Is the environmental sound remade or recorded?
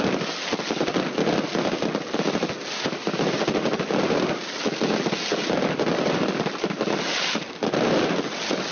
recorded